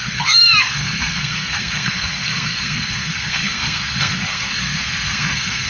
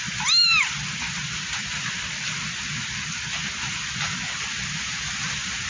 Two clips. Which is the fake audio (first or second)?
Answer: first